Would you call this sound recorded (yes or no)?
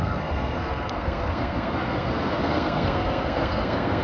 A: no